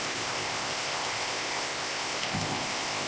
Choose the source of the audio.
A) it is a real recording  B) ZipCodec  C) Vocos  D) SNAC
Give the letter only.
B